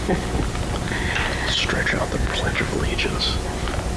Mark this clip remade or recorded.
recorded